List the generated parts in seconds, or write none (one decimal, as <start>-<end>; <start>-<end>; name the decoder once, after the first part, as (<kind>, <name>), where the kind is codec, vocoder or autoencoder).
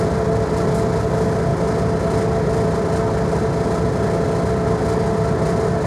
none